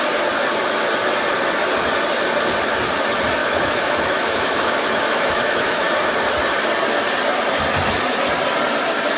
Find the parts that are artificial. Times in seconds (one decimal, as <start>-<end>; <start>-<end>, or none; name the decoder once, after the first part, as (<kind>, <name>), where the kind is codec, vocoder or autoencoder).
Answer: 3.4-5.8 (autoencoder, DAC-VAE)